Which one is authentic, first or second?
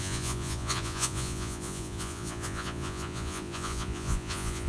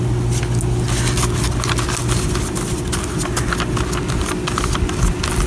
second